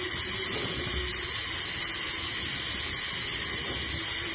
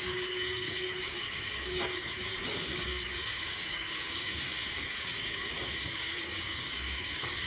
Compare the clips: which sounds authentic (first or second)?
first